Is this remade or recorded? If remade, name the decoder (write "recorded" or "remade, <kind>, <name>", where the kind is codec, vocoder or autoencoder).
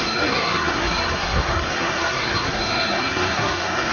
remade, codec, SNAC